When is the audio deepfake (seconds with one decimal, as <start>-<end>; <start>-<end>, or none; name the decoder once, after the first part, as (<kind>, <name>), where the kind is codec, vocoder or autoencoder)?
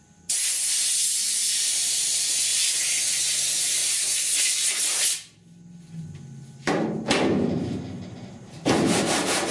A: none